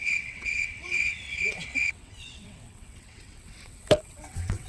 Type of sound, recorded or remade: remade